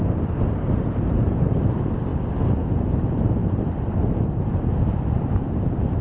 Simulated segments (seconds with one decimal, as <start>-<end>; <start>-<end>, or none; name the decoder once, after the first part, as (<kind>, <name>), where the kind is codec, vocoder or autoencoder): 0.0-2.1 (vocoder, BigVGAN v2); 2.7-6.0